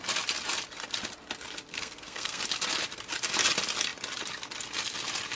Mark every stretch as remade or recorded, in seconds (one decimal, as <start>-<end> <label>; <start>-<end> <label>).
0.0-1.7 recorded; 1.7-2.4 remade; 2.4-5.4 recorded